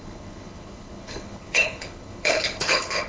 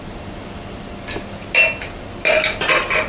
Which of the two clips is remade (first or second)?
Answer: first